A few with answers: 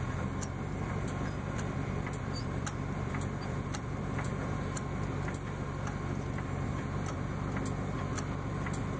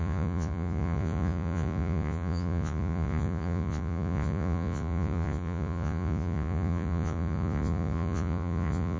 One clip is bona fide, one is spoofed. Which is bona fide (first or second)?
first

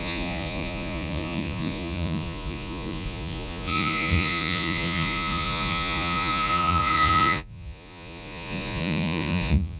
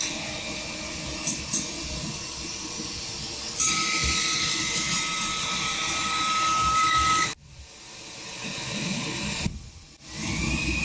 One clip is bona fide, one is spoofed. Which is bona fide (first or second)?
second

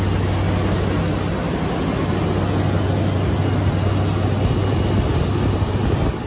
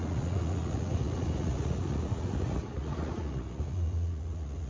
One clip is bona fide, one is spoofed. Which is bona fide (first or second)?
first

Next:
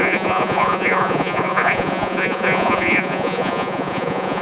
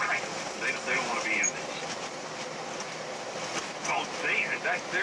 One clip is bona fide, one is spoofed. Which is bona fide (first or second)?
second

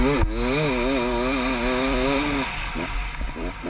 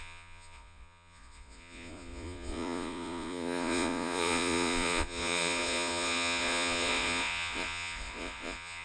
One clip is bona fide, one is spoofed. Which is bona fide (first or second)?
first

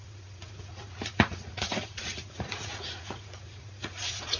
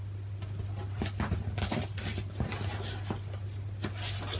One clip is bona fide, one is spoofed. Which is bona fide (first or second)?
second